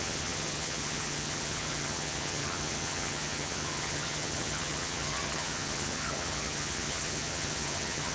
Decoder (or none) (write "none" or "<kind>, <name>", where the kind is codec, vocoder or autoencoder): vocoder, HiFi-GAN